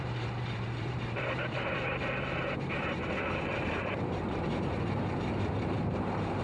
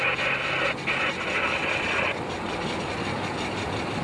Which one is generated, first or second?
first